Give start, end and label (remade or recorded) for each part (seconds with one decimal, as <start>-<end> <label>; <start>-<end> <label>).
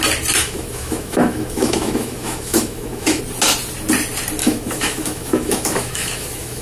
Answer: 0.0-0.4 recorded; 0.4-3.2 remade; 3.2-4.4 recorded; 4.4-6.6 remade